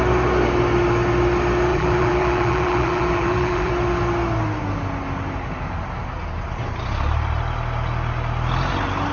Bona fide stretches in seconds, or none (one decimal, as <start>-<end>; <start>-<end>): 0.0-1.7; 3.7-9.1